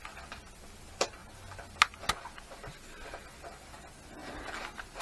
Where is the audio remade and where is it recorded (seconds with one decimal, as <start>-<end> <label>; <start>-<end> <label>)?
0.0-5.0 recorded